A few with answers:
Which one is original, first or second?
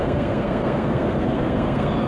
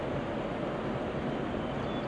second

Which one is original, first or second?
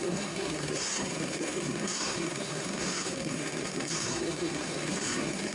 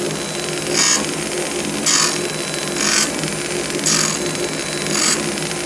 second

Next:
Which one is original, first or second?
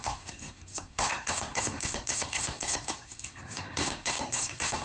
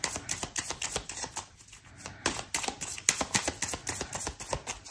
second